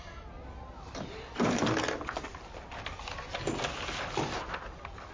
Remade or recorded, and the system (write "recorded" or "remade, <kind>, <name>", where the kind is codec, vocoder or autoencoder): recorded